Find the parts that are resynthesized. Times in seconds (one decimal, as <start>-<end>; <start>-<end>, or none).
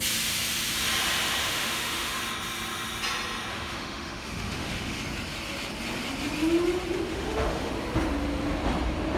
1.4-2.2; 3.5-5.0; 7.1-7.7